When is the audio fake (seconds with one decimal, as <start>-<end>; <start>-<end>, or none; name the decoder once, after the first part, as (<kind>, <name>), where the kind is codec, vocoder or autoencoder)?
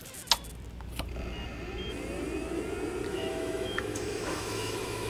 3.1-5.1 (autoencoder, DAC-VAE)